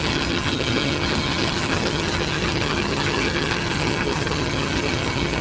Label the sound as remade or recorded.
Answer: remade